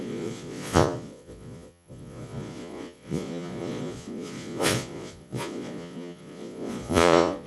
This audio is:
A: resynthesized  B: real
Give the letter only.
A